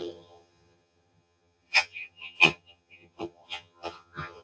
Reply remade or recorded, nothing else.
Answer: remade